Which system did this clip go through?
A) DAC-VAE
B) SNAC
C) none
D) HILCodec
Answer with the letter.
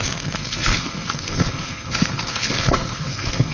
B